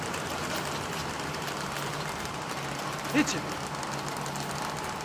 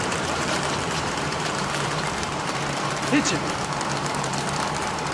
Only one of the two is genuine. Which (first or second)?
first